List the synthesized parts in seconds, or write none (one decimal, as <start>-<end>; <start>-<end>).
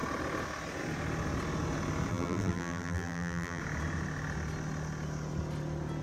2.1-3.6